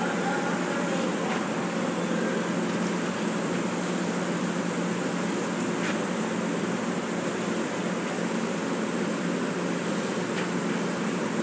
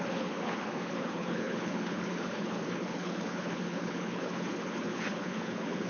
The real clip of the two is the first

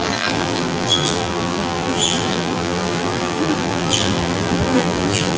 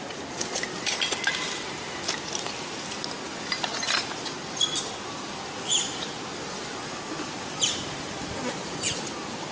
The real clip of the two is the second